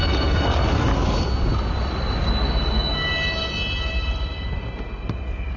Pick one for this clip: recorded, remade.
recorded